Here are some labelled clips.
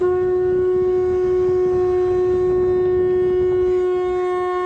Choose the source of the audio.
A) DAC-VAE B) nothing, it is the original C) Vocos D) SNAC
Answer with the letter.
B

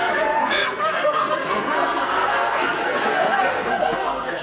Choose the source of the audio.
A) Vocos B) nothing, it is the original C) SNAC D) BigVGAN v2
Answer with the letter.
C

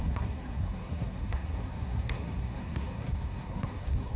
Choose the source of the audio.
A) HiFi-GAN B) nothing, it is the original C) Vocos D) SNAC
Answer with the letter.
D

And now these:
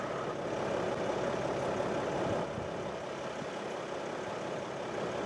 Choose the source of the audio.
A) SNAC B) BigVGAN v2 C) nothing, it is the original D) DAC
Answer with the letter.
C